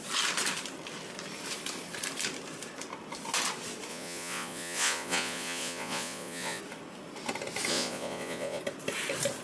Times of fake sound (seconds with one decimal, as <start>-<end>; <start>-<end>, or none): 3.9-6.6; 7.7-8.6